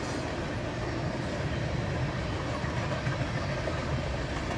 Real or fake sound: real